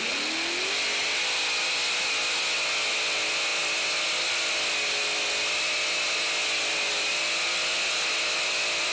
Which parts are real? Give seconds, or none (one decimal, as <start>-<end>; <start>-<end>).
0.0-8.9

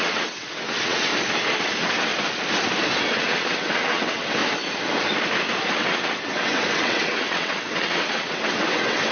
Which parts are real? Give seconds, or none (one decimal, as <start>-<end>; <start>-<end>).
1.1-1.6; 2.1-2.9; 4.4-5.7

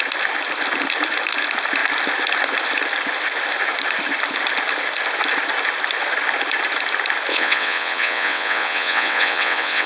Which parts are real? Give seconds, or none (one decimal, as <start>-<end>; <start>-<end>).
0.0-7.3

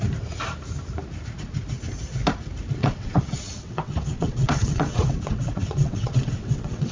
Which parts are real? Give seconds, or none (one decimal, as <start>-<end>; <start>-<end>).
0.0-2.8

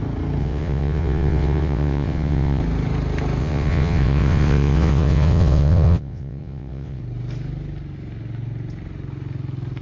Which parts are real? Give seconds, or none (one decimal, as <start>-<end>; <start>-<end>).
0.0-0.4; 2.6-3.4; 7.0-9.8

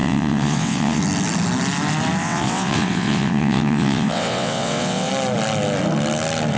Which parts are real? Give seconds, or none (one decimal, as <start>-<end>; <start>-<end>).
1.0-2.2; 5.1-6.6